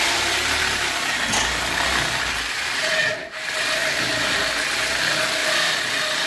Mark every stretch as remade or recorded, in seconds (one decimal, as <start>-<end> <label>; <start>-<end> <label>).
0.0-6.3 recorded